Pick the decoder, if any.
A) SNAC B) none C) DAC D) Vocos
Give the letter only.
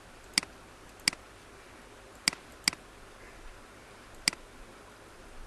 B